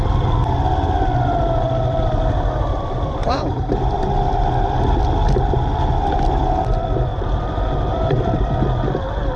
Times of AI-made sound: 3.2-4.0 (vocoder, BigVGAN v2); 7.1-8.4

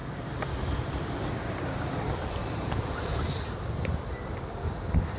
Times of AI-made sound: 2.4-3.8 (vocoder, BigVGAN v2)

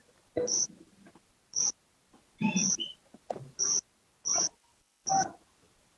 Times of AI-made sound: none

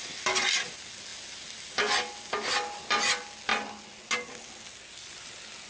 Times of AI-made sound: none

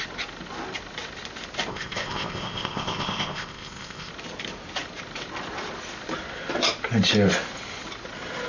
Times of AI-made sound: 1.7-4.1 (codec, ZipCodec)